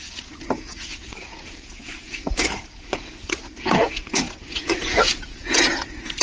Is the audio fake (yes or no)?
yes